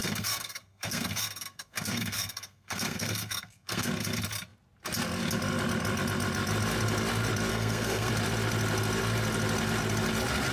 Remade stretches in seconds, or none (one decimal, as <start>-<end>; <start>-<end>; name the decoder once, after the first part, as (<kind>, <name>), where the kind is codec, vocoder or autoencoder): 0.0-3.9 (codec, SNAC); 7.5-8.1